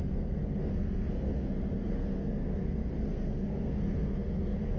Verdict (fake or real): fake